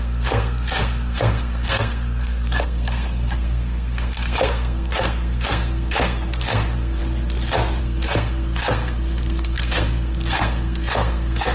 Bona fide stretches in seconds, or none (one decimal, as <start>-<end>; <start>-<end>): 7.0-7.8